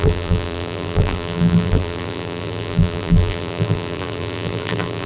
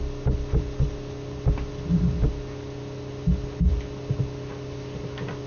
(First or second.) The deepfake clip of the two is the first